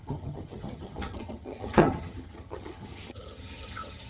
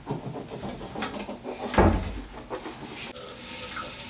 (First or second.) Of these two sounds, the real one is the second